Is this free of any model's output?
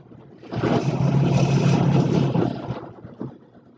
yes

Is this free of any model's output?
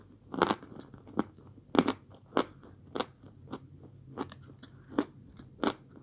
yes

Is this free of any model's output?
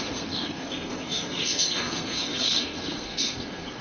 no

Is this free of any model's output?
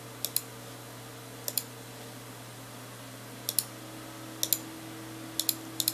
yes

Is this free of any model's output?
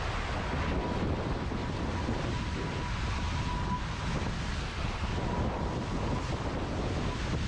yes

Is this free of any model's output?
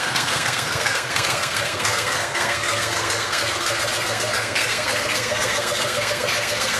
no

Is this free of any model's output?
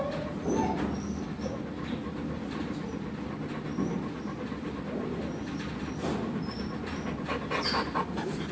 yes